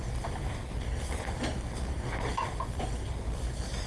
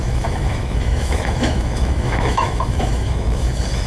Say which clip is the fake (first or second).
second